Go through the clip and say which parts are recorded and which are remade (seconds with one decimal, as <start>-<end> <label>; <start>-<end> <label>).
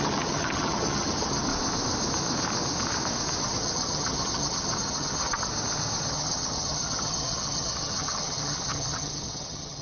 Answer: 0.0-1.5 remade; 1.5-3.4 recorded; 3.4-5.5 remade; 5.5-6.1 recorded; 6.1-9.8 remade